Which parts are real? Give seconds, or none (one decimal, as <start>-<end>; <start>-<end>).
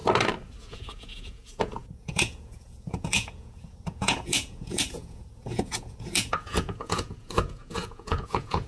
0.0-0.6